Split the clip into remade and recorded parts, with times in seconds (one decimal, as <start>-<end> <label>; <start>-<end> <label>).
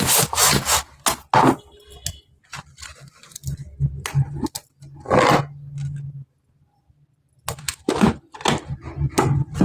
0.0-9.6 recorded